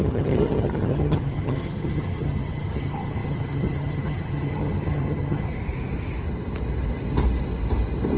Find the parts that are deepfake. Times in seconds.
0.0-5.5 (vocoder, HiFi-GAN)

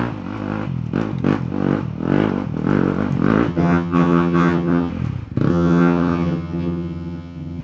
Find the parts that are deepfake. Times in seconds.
3.5-4.9 (vocoder, HiFi-GAN); 5.5-7.6

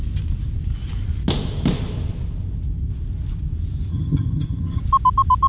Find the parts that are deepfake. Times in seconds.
3.9-4.8 (vocoder, HiFi-GAN)

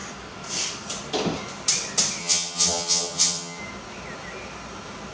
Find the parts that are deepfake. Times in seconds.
2.2-3.6 (vocoder, HiFi-GAN)

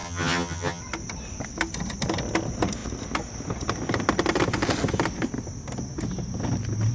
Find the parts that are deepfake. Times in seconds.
0.0-0.8 (vocoder, HiFi-GAN)

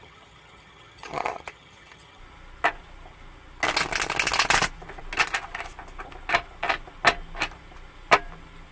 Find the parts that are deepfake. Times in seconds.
0.0-2.2 (vocoder, HiFi-GAN)

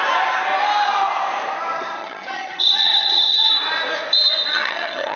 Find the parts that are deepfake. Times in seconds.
2.0-3.5 (vocoder, HiFi-GAN); 4.5-5.2

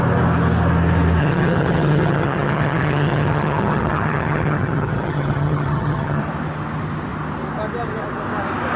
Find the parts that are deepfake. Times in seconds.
1.2-6.2 (vocoder, HiFi-GAN)